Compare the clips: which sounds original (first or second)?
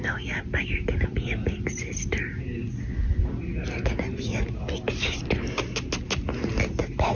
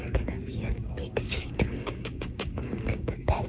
first